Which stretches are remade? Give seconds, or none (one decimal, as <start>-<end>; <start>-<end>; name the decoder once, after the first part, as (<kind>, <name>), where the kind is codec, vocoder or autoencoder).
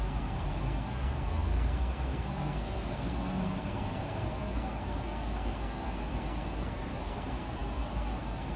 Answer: 0.0-8.6 (codec, SNAC)